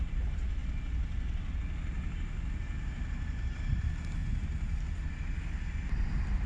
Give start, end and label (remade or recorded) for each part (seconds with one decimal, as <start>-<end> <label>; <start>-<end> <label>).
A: 0.0-6.5 recorded